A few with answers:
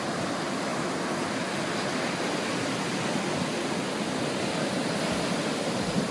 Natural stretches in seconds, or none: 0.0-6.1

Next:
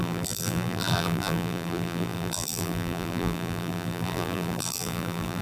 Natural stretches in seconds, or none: none